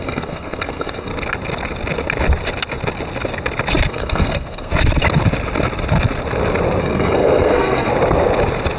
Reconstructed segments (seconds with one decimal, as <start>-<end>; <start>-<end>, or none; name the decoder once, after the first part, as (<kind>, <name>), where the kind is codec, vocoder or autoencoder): 0.0-1.1 (codec, SNAC); 3.9-4.7; 6.8-7.9